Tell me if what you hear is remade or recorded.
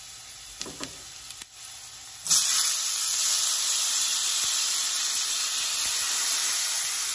recorded